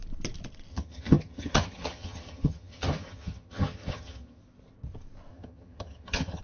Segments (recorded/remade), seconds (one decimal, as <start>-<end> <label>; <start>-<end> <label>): 0.0-0.7 recorded; 0.7-4.4 remade; 4.4-5.3 recorded; 5.3-6.4 remade